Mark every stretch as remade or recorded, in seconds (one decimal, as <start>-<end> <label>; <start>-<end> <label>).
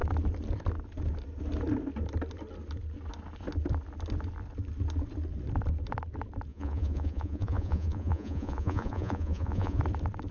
0.0-6.5 recorded; 6.5-9.8 remade; 9.8-10.3 recorded